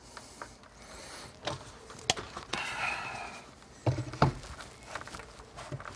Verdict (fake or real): real